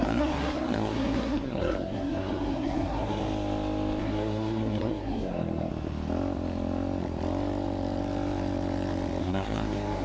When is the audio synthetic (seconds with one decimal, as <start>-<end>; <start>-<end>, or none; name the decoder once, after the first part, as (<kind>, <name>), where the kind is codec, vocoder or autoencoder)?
0.0-3.2 (codec, SNAC); 4.0-5.7; 9.2-10.0